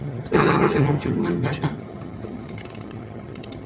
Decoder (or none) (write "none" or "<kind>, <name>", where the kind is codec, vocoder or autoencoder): vocoder, HiFi-GAN